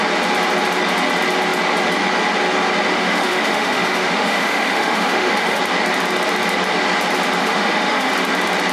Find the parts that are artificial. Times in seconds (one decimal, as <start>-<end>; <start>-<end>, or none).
2.9-5.6; 7.4-8.1